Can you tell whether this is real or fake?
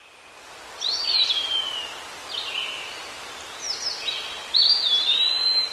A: real